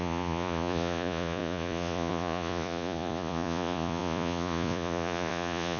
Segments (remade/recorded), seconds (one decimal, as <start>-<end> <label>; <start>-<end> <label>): 0.0-5.8 remade